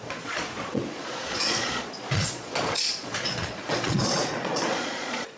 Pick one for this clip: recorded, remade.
remade